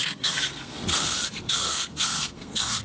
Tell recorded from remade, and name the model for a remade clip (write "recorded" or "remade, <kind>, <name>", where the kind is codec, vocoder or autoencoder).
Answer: remade, codec, SNAC